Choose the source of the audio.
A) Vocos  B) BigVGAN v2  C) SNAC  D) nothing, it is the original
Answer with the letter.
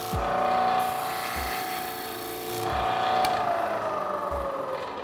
D